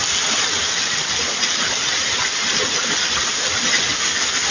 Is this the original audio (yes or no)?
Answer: yes